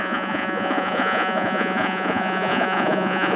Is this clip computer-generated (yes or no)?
yes